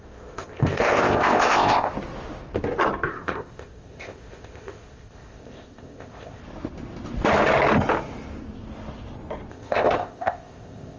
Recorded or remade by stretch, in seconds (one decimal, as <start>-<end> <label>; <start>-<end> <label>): 0.0-1.9 remade; 1.9-3.1 recorded; 3.1-6.4 remade; 6.4-9.5 recorded; 9.5-11.0 remade